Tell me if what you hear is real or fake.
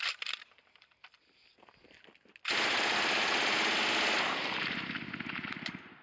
real